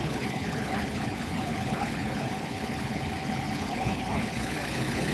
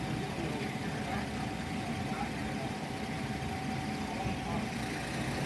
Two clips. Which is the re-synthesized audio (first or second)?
first